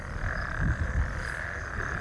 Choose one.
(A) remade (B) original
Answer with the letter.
B